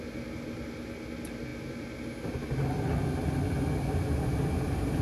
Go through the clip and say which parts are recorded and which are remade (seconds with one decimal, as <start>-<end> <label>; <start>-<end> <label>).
0.0-5.0 recorded